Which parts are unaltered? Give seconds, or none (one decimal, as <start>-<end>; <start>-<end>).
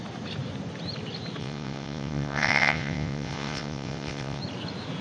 0.0-1.4; 4.4-5.0